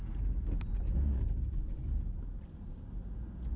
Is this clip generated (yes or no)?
no